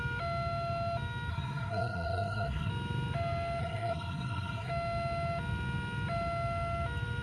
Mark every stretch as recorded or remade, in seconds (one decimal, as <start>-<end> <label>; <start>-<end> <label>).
0.0-1.3 recorded; 1.3-2.7 remade; 2.7-3.6 recorded; 3.6-4.7 remade; 4.7-7.2 recorded